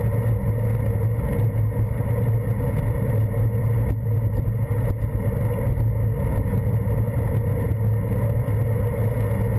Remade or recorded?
recorded